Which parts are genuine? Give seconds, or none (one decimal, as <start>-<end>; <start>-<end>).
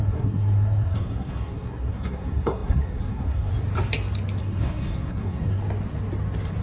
3.5-4.4; 5.6-6.6